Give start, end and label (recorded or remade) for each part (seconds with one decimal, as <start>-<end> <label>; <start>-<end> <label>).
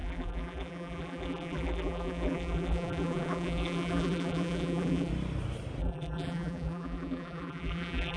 0.0-5.1 remade; 5.1-5.8 recorded; 5.8-8.2 remade